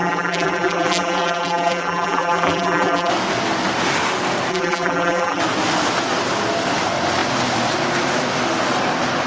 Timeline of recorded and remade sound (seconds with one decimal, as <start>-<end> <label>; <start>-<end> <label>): 0.0-3.1 remade; 3.1-4.5 recorded; 4.5-5.4 remade; 5.4-9.3 recorded